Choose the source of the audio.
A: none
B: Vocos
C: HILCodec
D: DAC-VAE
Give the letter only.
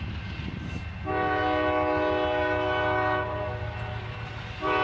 A